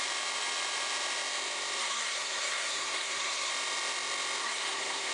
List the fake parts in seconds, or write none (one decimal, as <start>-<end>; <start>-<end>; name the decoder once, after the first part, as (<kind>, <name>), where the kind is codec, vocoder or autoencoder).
1.8-3.5 (codec, SNAC); 4.4-5.1